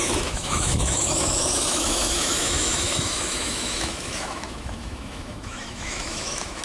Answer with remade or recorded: remade